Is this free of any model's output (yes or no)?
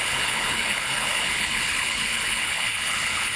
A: no